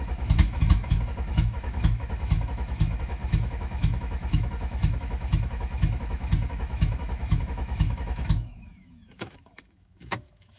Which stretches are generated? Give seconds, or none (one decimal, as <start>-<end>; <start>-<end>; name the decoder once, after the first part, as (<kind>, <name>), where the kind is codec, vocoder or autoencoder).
0.0-10.6 (autoencoder, DAC-VAE)